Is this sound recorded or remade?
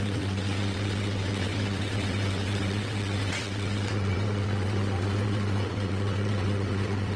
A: remade